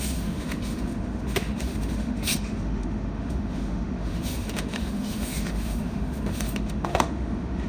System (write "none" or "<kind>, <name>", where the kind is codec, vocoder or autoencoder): autoencoder, DAC-VAE